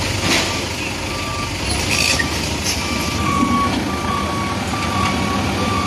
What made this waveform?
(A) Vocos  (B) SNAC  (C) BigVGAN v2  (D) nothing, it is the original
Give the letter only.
D